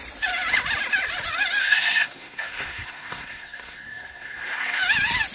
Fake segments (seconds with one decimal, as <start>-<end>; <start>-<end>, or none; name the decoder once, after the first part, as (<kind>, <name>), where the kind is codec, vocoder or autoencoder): 1.6-4.8 (codec, SNAC)